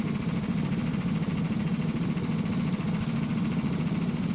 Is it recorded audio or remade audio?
recorded